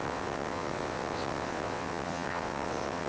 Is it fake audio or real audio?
fake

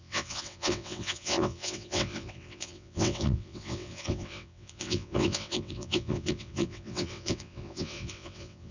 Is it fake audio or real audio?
fake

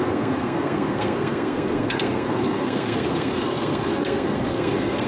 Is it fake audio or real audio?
fake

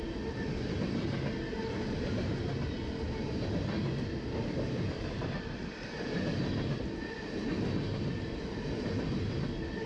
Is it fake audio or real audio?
real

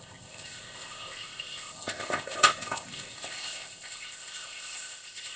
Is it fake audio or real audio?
fake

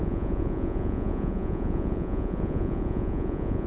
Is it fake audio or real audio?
fake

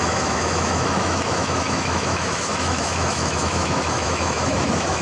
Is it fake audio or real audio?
fake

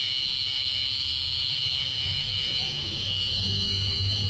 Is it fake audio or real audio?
fake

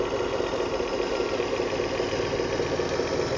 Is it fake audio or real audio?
real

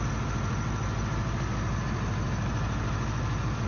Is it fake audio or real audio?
real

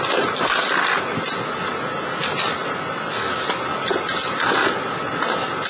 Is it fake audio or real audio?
real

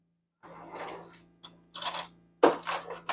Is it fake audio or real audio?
real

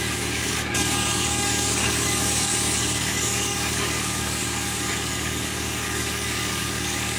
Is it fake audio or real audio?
fake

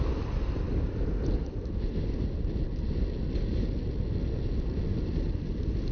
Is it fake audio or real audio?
real